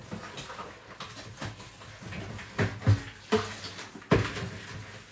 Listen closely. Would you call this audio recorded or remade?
recorded